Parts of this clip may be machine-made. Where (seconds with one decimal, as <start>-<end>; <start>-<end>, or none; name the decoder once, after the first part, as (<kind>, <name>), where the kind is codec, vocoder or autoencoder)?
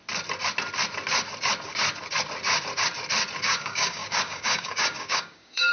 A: 3.4-5.7 (codec, DAC)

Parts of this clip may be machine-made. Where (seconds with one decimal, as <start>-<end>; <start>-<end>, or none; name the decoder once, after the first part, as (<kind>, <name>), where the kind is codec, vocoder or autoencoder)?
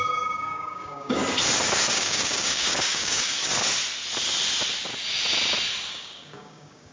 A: 0.0-1.2 (codec, DAC); 1.9-3.5; 5.9-6.9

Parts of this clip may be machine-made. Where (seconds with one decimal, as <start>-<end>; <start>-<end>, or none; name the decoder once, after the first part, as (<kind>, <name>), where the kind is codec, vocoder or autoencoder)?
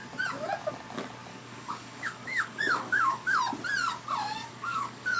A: 1.3-3.4 (codec, DAC); 4.2-5.2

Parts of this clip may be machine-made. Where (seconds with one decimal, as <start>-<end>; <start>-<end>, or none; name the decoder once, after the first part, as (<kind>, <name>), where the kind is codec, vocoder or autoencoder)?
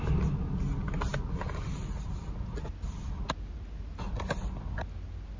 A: none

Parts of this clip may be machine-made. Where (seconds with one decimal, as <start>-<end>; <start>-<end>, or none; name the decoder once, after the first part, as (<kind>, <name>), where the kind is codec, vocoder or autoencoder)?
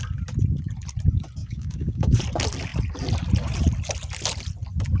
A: 1.4-2.2 (codec, DAC)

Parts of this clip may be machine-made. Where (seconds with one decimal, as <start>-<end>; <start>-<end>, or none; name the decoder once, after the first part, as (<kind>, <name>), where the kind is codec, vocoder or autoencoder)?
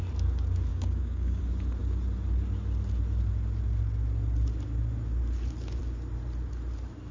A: 0.7-1.4 (codec, DAC)